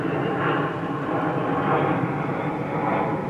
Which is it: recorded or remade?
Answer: recorded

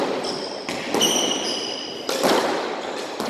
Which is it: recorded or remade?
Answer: recorded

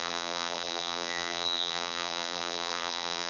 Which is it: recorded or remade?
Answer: remade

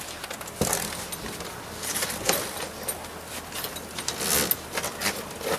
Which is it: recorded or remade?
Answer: recorded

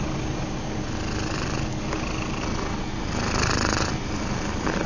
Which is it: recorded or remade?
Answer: recorded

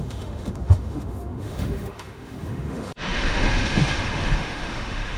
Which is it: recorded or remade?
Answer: remade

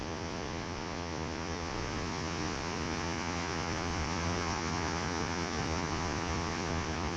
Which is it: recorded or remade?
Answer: remade